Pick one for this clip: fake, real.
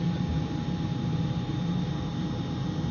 real